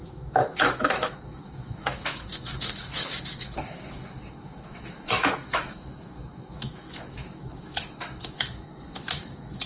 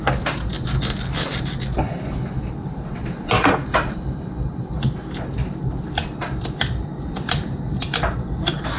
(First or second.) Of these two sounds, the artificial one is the first